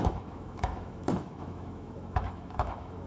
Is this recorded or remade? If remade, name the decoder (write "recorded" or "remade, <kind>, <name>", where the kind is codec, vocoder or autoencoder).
remade, autoencoder, DAC-VAE